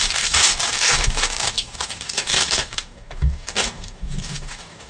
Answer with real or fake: fake